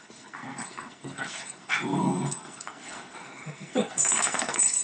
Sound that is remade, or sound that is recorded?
remade